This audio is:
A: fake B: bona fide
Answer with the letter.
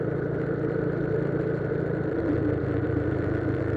B